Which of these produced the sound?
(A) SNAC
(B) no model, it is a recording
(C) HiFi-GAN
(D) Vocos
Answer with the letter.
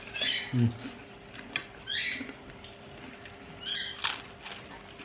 B